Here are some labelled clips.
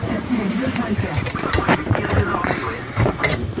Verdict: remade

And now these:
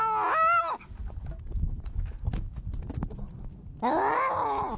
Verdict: recorded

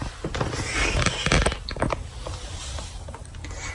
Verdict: recorded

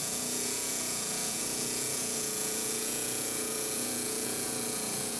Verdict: remade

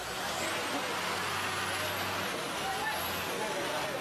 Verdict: recorded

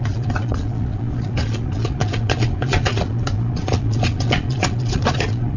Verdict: remade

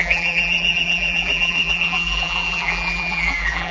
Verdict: remade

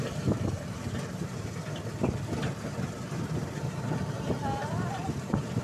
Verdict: remade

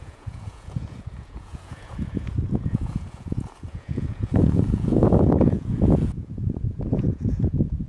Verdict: remade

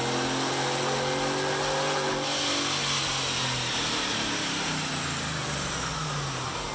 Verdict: recorded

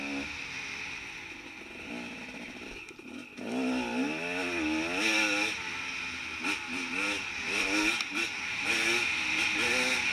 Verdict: recorded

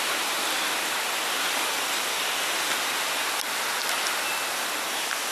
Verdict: remade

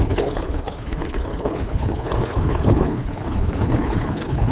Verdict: remade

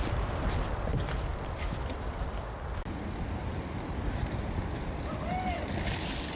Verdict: recorded